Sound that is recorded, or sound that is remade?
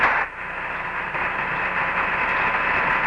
recorded